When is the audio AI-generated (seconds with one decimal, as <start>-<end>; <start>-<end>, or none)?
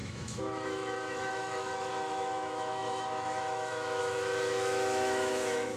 0.0-5.8